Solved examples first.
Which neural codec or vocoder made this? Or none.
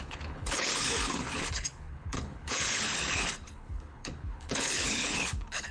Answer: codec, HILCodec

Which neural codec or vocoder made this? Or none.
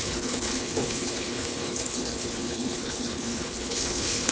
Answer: codec, HILCodec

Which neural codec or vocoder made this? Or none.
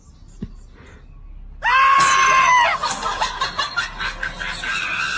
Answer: none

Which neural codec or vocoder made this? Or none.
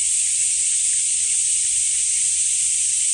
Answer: vocoder, BigVGAN v2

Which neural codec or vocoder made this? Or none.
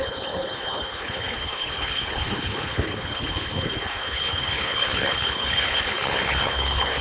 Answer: codec, HILCodec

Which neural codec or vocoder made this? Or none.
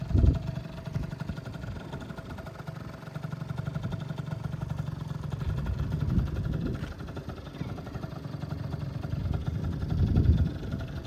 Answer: none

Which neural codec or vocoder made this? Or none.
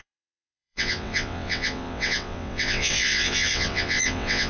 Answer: vocoder, WaveNeXt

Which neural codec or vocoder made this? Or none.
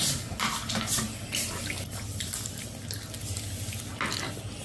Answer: none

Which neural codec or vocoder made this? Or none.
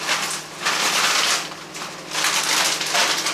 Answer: none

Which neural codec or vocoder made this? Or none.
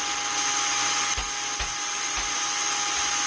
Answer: none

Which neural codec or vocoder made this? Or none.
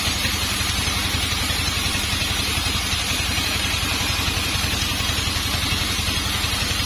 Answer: vocoder, BigVGAN v2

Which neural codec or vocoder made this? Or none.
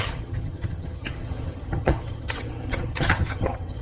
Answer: vocoder, HiFi-GAN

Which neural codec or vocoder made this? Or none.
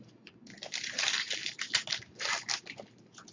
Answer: none